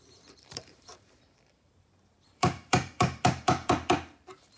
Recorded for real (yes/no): no